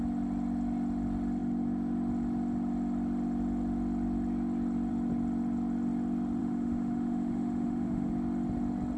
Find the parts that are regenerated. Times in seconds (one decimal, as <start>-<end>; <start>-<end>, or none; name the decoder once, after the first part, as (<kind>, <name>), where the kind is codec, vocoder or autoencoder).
6.4-8.1 (autoencoder, DAC-VAE)